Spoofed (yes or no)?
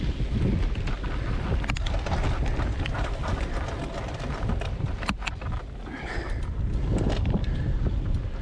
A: no